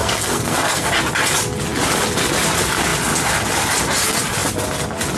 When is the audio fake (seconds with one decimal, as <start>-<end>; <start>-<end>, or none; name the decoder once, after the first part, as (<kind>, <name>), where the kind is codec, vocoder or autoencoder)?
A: 0.0-0.9 (codec, SNAC)